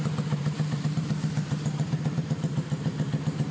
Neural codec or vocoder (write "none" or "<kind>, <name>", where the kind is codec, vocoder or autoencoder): vocoder, BigVGAN v2